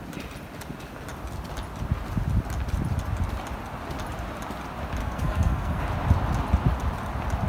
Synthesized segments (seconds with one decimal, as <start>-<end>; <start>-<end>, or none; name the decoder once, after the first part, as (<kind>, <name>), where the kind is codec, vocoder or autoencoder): 5.0-5.8 (codec, SNAC)